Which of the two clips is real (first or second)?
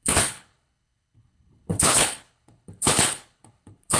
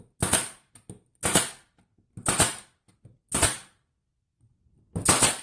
second